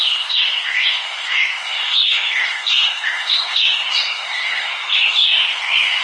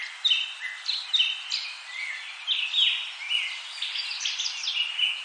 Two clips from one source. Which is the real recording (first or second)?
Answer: second